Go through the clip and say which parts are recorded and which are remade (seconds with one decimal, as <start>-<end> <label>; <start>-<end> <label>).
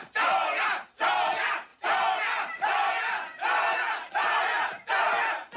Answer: 0.0-5.6 recorded